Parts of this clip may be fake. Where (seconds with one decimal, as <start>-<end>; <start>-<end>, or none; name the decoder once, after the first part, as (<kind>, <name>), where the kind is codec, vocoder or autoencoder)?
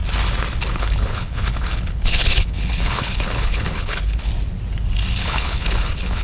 0.7-4.3 (codec, HILCodec); 5.2-6.2